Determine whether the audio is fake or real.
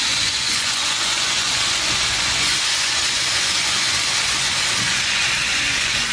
fake